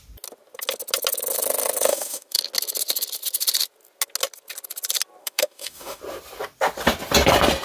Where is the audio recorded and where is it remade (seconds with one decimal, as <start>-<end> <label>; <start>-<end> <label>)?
0.0-1.9 recorded; 1.9-2.4 remade; 2.4-5.2 recorded; 5.2-6.0 remade; 6.0-7.6 recorded

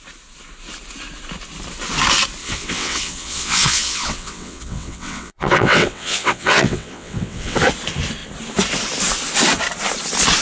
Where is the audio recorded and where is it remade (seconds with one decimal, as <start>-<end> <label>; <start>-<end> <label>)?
0.0-2.4 recorded; 2.4-7.6 remade; 7.6-10.4 recorded

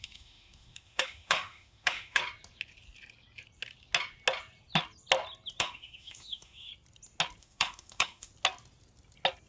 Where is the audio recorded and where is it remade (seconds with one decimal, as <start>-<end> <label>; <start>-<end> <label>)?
0.0-2.2 remade; 2.2-5.6 recorded; 5.6-6.7 remade; 6.7-7.4 recorded; 7.4-8.3 remade; 8.3-9.5 recorded